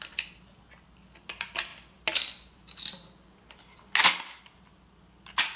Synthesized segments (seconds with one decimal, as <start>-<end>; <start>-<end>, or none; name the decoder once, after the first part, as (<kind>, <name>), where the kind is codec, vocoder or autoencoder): none